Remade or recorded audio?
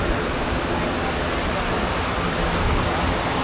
recorded